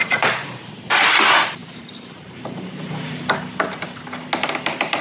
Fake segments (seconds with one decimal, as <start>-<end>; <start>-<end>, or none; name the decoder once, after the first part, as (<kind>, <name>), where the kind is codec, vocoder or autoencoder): 0.0-0.7 (vocoder, BigVGAN v2); 1.6-3.3